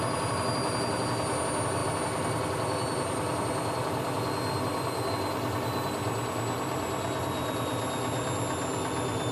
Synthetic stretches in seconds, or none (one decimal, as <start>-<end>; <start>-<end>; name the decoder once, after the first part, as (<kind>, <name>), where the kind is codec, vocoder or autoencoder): 1.8-5.1 (vocoder, BigVGAN v2)